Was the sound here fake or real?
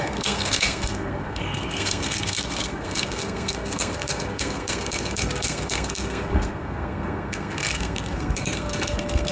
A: fake